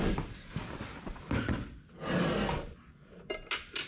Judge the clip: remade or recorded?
recorded